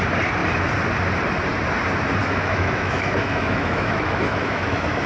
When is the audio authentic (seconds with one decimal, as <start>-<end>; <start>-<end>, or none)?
0.0-2.2

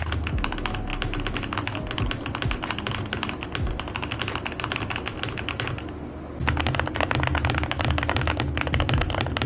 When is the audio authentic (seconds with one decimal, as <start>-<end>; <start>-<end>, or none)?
0.0-9.5

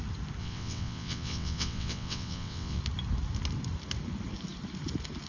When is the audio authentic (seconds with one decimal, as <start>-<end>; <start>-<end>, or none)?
0.0-0.4; 2.8-5.3

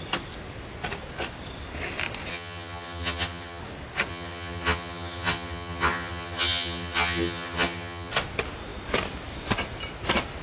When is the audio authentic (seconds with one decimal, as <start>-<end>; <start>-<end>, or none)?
0.0-2.3; 3.6-4.1; 8.1-10.4

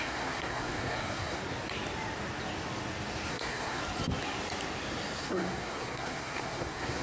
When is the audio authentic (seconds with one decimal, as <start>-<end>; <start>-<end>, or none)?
1.4-3.3; 3.8-5.2

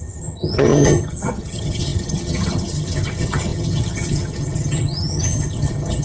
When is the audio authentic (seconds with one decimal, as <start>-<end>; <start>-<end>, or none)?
none